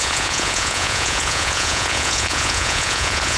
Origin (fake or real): fake